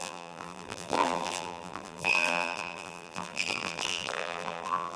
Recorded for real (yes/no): no